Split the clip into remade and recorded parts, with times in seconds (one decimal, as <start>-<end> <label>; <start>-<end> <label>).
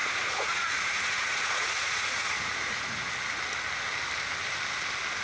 0.0-3.1 remade; 3.1-5.2 recorded